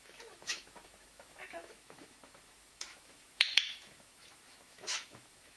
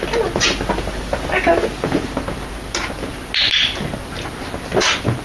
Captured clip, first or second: second